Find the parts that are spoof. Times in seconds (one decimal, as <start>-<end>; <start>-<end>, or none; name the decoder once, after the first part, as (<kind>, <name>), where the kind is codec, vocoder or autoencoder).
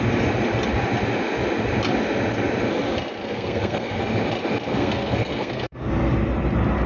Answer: 3.2-4.0 (codec, SNAC); 4.7-5.9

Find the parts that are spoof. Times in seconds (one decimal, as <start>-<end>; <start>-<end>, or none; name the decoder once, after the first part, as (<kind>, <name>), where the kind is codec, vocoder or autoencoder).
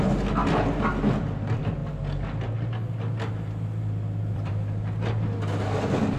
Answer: none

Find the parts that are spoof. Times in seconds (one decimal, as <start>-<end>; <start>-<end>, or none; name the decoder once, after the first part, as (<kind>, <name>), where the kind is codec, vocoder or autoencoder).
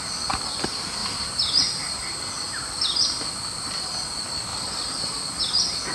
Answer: 1.0-2.2 (vocoder, BigVGAN v2); 4.5-5.4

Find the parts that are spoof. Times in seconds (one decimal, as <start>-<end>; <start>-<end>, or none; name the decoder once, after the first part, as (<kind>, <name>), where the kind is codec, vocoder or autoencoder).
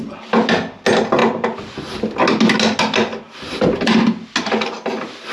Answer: none